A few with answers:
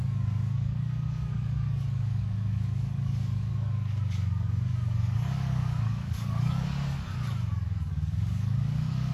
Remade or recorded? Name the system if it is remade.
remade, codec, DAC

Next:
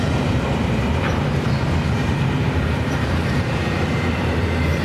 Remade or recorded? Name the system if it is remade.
remade, vocoder, BigVGAN v2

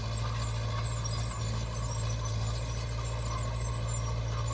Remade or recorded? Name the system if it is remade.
recorded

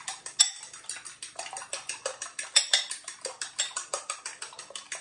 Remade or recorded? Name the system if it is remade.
recorded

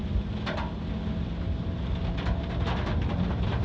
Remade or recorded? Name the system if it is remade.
recorded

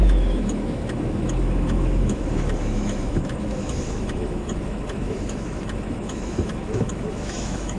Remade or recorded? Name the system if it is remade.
remade, autoencoder, DAC-VAE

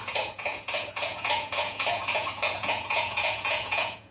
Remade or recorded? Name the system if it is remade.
remade, vocoder, Vocos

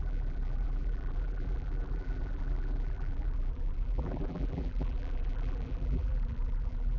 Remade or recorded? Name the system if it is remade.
remade, vocoder, BigVGAN v2